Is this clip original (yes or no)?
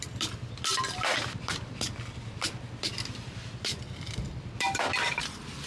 no